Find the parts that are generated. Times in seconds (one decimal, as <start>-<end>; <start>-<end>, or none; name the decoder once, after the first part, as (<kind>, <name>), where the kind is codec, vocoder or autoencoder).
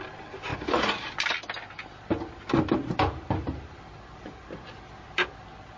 none